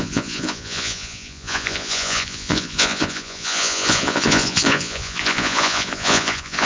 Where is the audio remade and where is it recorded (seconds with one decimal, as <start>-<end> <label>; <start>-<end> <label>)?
0.0-6.7 remade